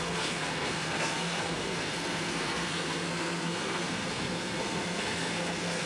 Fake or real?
fake